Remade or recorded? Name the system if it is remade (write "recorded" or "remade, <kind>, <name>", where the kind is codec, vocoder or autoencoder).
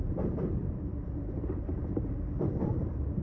remade, vocoder, BigVGAN v2